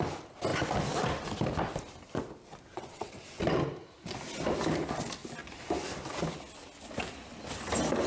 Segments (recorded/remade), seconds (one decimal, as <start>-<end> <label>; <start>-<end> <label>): 0.0-2.7 recorded; 2.7-3.4 remade; 3.4-8.1 recorded